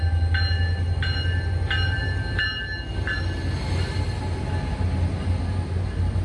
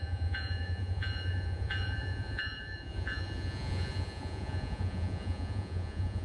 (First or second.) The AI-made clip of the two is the second